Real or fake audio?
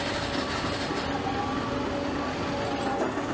real